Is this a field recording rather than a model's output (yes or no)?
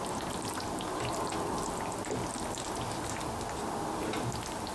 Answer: yes